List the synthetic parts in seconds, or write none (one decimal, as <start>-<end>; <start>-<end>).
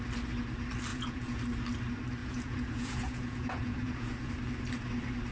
0.9-1.4; 2.2-4.3